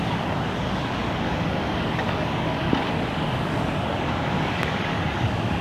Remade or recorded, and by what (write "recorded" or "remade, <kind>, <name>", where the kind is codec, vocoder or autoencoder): remade, codec, DAC